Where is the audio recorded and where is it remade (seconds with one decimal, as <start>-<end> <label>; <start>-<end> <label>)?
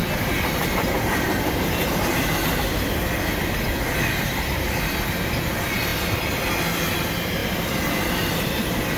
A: 0.0-9.0 recorded